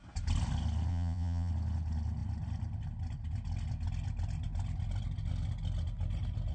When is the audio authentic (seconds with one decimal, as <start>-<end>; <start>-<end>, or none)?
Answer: 0.0-0.9; 1.5-6.5